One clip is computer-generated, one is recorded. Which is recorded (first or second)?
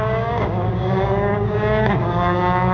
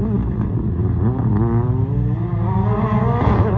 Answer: second